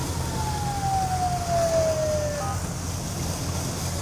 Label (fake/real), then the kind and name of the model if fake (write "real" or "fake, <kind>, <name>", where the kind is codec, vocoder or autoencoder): real